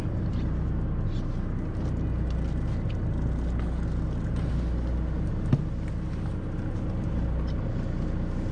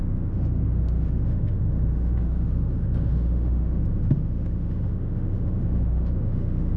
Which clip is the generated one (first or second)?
second